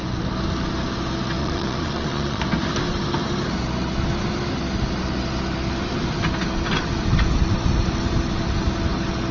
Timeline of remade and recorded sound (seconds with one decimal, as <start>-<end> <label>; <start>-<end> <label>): 0.0-1.4 recorded; 1.4-2.4 remade; 2.4-9.3 recorded